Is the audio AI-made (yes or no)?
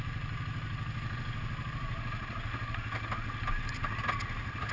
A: no